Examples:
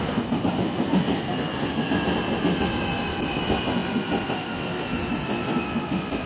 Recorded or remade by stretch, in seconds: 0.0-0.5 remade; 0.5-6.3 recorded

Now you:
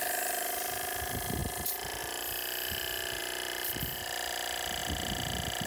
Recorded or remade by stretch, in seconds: 0.0-1.4 remade; 1.4-2.0 recorded; 2.0-5.7 remade

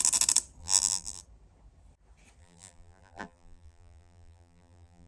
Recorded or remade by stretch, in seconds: 0.0-0.6 recorded; 0.6-1.2 remade; 1.2-2.4 recorded; 2.4-5.1 remade